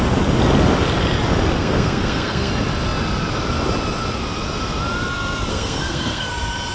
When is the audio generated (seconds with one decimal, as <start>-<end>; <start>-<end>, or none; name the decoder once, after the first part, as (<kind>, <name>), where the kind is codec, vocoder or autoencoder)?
1.6-2.5 (codec, SNAC); 5.5-6.3